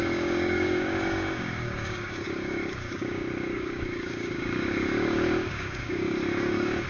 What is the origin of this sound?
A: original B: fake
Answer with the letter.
B